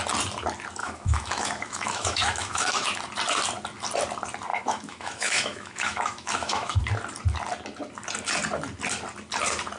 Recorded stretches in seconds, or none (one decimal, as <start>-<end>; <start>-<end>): 0.0-0.8; 3.0-4.5; 6.8-9.8